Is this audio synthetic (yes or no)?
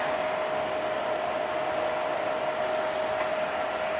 no